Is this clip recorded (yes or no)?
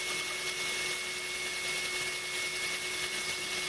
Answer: yes